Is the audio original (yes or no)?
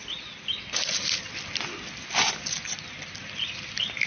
yes